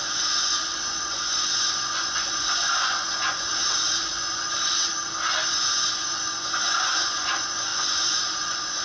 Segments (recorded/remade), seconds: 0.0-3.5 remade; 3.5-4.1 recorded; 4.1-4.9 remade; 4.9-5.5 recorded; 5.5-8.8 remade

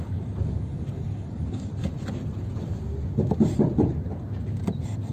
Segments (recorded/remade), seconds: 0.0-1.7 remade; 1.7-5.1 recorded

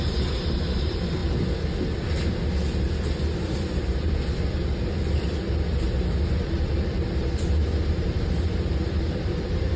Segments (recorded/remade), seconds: 0.0-1.2 remade; 1.2-6.0 recorded; 6.0-9.8 remade

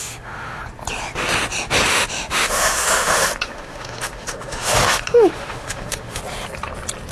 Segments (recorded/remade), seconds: 0.0-0.6 remade; 0.6-1.9 recorded; 1.9-6.2 remade; 6.2-7.1 recorded

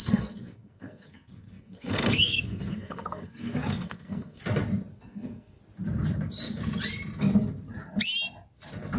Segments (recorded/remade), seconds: 0.0-4.4 remade; 4.4-5.0 recorded; 5.0-5.6 remade; 5.6-9.0 recorded

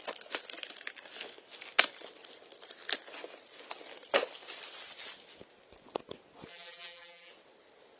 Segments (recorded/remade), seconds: 0.0-6.5 recorded; 6.5-7.3 remade; 7.3-8.0 recorded

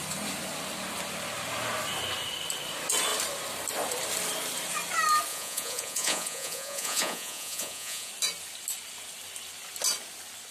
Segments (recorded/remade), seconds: 0.0-5.3 recorded; 5.3-8.1 remade; 8.1-10.5 recorded